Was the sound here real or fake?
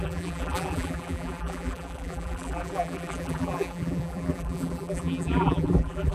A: fake